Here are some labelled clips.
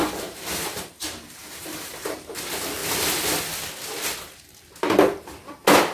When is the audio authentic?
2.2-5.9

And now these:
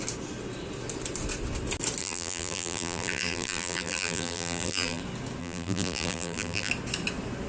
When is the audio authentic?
0.0-2.0; 5.0-5.4; 6.7-7.5

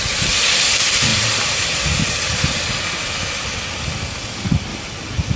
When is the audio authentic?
0.0-1.1; 2.7-4.7

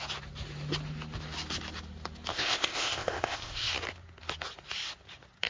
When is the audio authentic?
0.0-2.3; 3.7-5.5